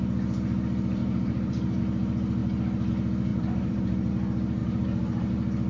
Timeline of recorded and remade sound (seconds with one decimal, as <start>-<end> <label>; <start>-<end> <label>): 0.0-1.0 recorded; 1.0-1.8 remade; 1.8-3.3 recorded; 3.3-4.1 remade; 4.1-4.6 recorded; 4.6-5.3 remade; 5.3-5.7 recorded